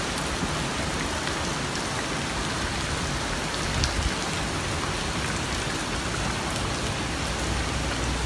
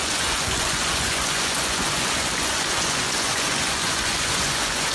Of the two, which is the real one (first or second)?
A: first